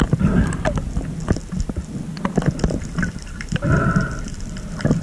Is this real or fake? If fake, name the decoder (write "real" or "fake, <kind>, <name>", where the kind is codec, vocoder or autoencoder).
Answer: real